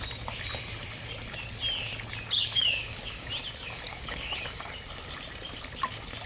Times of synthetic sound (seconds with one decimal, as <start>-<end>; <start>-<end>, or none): 2.4-3.3; 3.9-4.7